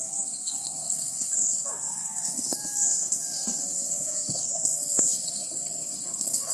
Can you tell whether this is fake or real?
fake